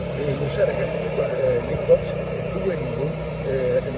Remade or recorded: remade